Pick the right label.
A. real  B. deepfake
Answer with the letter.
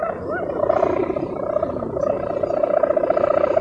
B